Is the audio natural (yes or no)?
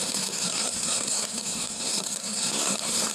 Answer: no